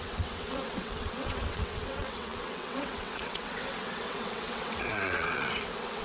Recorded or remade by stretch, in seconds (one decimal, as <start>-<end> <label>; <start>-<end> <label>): 0.0-6.0 remade